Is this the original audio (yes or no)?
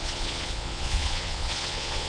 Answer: no